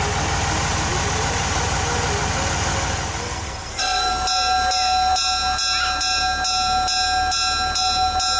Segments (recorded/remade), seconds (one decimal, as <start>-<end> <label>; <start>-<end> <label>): 0.0-3.2 recorded; 3.2-4.1 remade; 4.1-8.4 recorded